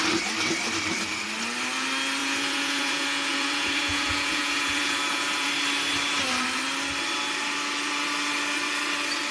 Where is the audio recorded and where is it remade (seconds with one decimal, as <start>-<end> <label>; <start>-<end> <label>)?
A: 0.0-2.2 recorded; 2.2-5.5 remade; 5.5-9.3 recorded